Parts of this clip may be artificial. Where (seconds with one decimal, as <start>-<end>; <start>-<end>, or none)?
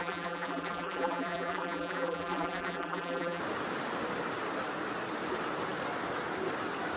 0.0-3.4